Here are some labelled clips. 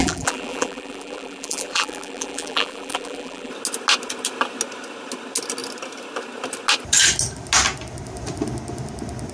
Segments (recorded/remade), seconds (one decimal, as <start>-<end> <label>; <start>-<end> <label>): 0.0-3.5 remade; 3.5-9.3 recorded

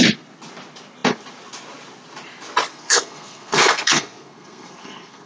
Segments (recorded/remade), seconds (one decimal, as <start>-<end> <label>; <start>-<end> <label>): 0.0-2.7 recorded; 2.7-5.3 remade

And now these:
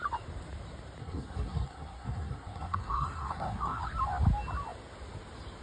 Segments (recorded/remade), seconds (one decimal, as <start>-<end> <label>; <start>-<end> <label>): 0.0-1.0 recorded; 1.0-3.8 remade; 3.8-5.6 recorded